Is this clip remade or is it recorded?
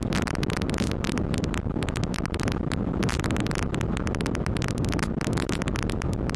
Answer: recorded